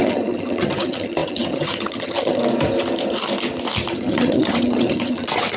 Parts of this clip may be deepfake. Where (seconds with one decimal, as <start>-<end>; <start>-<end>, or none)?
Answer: 0.0-2.4; 3.9-5.6